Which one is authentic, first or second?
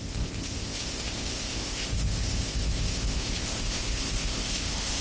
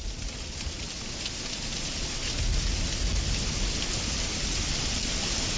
second